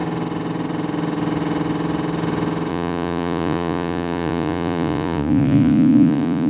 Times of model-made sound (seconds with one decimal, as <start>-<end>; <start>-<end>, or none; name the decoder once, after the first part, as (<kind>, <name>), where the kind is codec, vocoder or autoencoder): 2.7-6.5 (vocoder, Vocos)